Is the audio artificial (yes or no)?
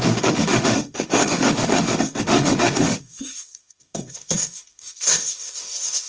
yes